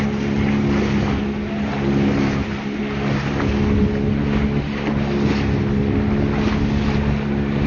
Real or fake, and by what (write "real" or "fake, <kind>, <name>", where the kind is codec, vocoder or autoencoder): real